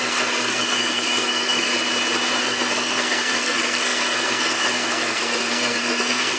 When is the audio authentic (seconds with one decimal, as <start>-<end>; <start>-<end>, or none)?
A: 1.7-2.4